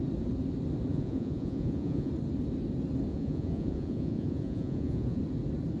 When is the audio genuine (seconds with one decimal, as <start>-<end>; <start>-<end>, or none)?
0.0-0.9; 2.1-3.1; 5.2-5.8